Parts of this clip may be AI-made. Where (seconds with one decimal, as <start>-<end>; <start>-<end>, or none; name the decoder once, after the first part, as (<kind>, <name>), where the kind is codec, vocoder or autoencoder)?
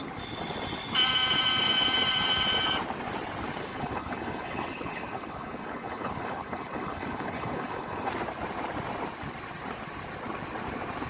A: 3.7-8.1 (codec, HILCodec)